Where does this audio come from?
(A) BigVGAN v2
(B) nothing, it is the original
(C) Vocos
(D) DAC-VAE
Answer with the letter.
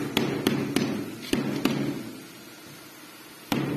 B